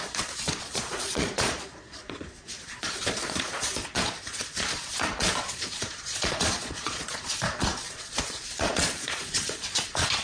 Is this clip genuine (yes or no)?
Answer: no